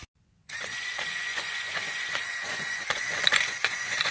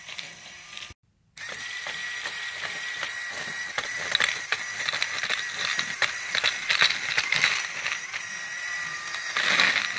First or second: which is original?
second